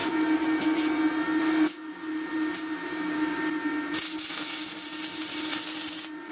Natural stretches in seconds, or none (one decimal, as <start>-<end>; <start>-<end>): 0.0-6.3